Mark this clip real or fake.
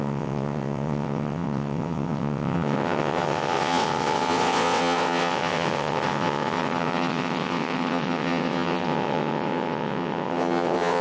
fake